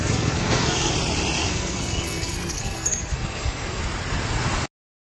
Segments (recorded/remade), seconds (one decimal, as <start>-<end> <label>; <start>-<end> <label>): 0.0-0.9 remade; 0.9-1.4 recorded; 1.4-3.8 remade; 3.8-5.1 recorded